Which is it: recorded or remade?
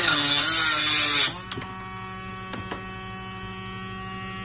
recorded